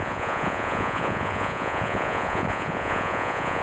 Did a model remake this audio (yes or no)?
yes